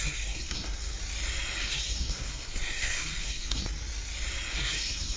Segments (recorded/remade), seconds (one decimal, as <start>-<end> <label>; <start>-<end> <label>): 0.0-1.0 remade; 1.0-1.6 recorded; 1.6-3.6 remade; 3.6-4.5 recorded; 4.5-5.2 remade